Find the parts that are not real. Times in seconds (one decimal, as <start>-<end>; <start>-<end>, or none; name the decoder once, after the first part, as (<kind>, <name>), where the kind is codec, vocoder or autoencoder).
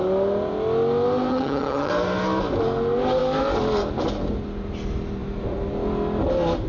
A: 1.3-1.9 (vocoder, HiFi-GAN)